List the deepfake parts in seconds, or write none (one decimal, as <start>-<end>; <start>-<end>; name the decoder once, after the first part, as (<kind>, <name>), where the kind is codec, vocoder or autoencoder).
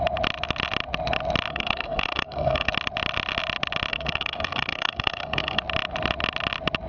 1.5-2.7 (codec, SNAC); 3.9-5.6